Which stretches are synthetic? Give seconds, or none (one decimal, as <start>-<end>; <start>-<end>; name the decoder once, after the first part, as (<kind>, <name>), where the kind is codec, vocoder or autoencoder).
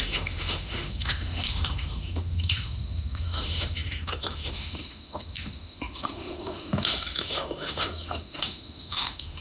0.0-9.4 (autoencoder, DAC-VAE)